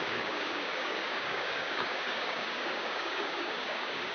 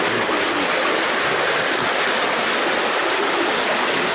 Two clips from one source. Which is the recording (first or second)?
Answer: second